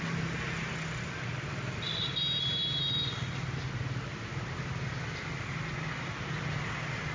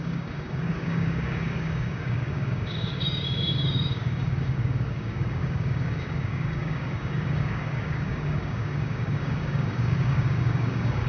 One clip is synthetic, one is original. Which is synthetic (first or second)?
second